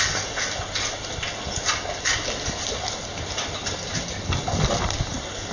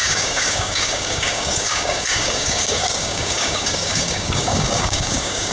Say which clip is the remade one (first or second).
second